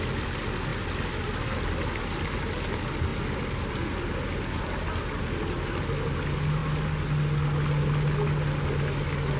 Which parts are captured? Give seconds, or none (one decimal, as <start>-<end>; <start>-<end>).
0.0-9.4